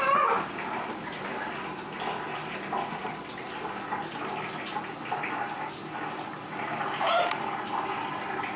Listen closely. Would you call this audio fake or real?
real